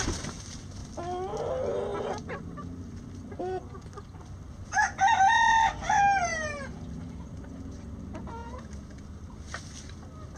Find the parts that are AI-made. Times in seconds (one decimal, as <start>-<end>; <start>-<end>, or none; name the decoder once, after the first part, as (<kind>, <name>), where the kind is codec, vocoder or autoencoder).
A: 6.3-8.0 (vocoder, BigVGAN v2)